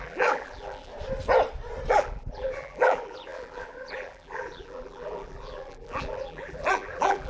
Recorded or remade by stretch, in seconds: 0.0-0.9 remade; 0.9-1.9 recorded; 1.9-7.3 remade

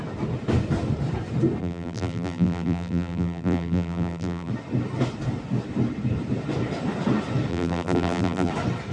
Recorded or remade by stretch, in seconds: 0.0-1.6 recorded; 1.6-4.5 remade; 4.5-7.5 recorded; 7.5-8.5 remade; 8.5-8.9 recorded

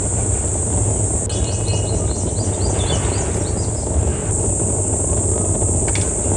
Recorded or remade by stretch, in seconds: 0.0-6.4 recorded

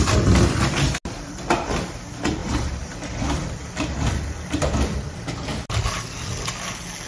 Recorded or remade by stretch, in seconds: 0.0-2.4 recorded; 2.4-4.1 remade; 4.1-7.1 recorded

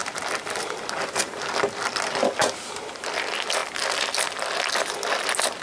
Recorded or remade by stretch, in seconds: 0.0-3.2 remade; 3.2-3.6 recorded; 3.6-4.3 remade; 4.3-5.6 recorded

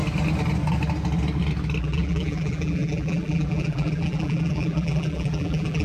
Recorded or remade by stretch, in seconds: 0.0-1.8 recorded; 1.8-5.8 remade

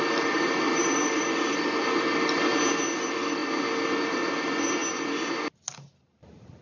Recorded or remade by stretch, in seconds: 0.0-2.5 remade; 2.5-3.0 recorded; 3.0-3.4 remade; 3.4-4.0 recorded; 4.0-4.8 remade; 4.8-6.0 recorded; 6.0-6.6 remade

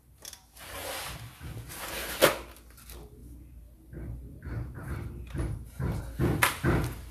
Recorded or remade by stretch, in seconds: 0.0-3.2 recorded; 3.2-6.0 remade; 6.0-7.1 recorded